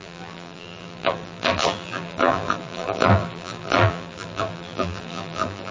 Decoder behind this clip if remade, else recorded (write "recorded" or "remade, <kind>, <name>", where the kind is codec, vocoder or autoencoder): remade, vocoder, BigVGAN v2